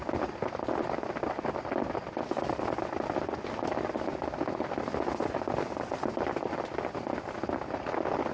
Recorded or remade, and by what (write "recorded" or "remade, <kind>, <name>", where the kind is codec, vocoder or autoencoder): recorded